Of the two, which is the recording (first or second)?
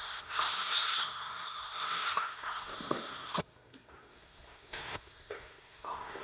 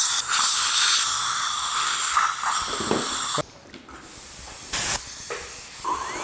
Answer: second